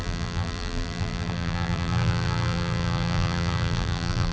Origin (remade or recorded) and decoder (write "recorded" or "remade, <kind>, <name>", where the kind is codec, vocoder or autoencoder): remade, vocoder, BigVGAN v2